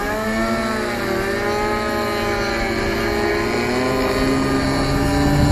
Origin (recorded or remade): recorded